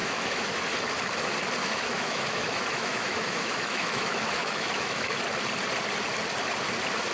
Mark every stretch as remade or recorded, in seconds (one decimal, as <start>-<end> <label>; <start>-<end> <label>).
0.0-0.6 remade; 0.6-1.6 recorded; 1.6-5.1 remade; 5.1-7.1 recorded